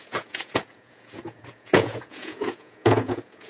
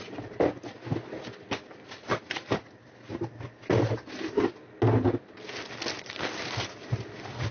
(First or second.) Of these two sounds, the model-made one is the first